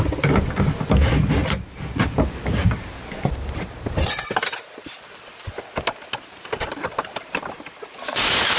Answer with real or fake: real